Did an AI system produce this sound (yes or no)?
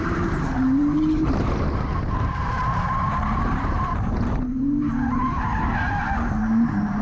yes